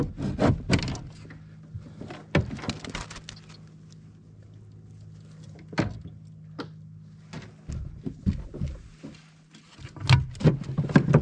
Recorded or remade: recorded